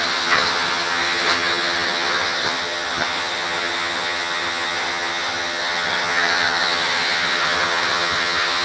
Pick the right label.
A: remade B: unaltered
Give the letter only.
A